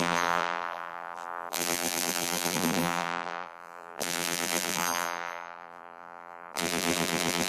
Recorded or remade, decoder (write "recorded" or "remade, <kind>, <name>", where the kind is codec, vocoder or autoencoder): remade, vocoder, BigVGAN v2